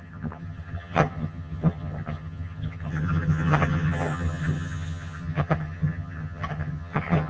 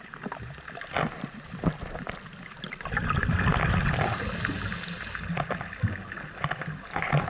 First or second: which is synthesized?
first